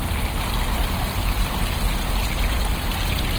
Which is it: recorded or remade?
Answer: recorded